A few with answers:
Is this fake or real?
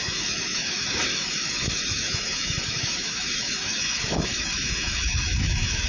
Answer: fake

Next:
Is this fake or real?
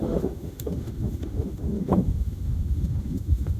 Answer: fake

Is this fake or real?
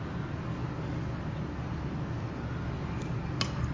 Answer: real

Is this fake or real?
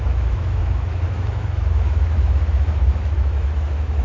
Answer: fake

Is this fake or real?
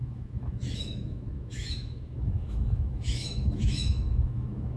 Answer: fake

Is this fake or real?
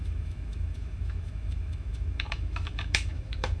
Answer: fake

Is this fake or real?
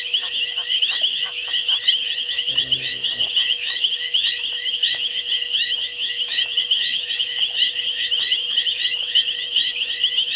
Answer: fake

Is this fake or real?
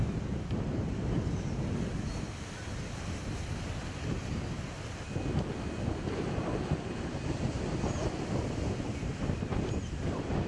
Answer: real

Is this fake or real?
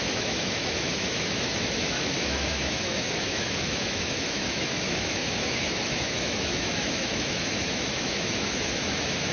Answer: fake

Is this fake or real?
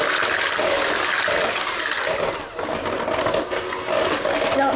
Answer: real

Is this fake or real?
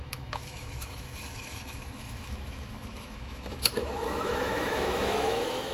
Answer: fake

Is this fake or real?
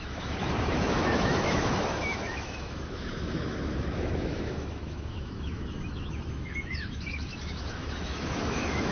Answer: fake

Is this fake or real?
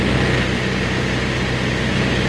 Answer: real